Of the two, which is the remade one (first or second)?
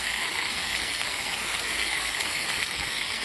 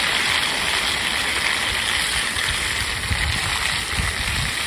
first